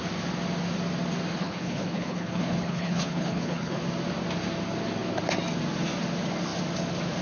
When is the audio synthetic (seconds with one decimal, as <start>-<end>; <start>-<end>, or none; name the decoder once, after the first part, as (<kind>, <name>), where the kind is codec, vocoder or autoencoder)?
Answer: 1.4-3.8 (codec, HILCodec)